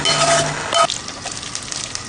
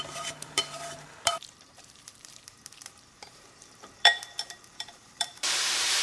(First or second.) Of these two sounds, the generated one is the second